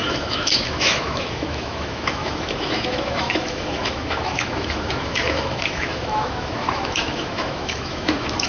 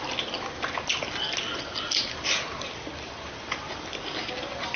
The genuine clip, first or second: second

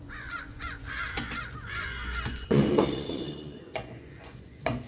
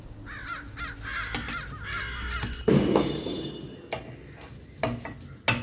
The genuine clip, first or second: second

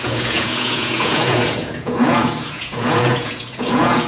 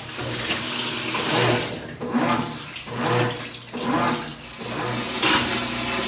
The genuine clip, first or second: second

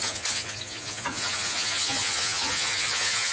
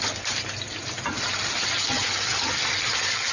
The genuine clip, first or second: second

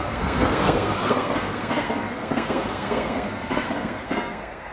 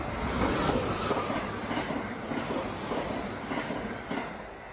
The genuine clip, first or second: second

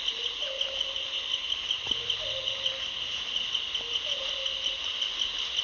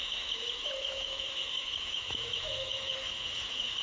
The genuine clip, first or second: first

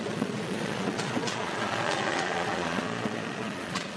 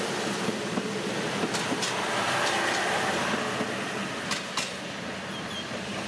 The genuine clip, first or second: second